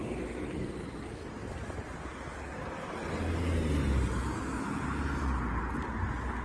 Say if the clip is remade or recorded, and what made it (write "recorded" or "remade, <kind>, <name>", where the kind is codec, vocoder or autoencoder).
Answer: recorded